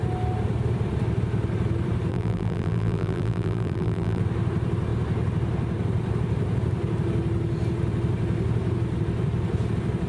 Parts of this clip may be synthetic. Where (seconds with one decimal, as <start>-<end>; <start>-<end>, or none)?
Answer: 2.1-4.2